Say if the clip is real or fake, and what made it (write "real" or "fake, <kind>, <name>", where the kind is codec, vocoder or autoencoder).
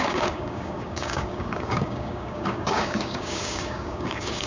fake, codec, DAC